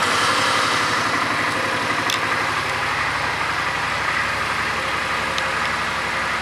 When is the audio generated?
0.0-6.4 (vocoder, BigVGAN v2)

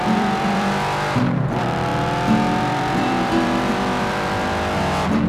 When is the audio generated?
0.0-5.3 (vocoder, BigVGAN v2)